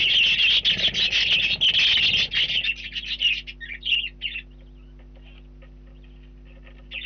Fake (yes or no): no